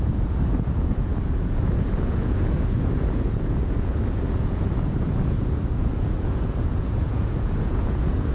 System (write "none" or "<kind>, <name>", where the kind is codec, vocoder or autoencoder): vocoder, Vocos